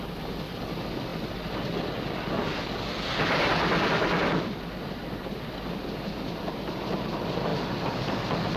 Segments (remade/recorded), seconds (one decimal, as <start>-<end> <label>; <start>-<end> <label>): 0.0-8.6 recorded